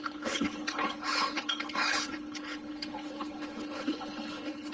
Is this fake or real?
fake